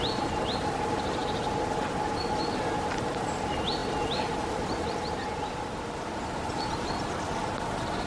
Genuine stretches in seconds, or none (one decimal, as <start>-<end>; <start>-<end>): 0.0-8.1